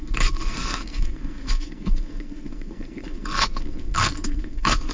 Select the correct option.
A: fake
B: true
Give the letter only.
A